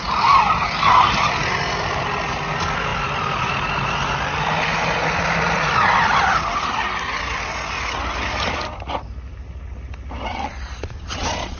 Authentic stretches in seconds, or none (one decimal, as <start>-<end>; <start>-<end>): 0.0-10.3